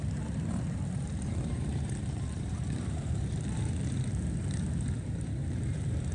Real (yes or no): no